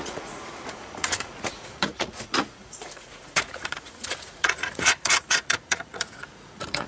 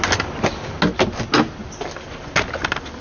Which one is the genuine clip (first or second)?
second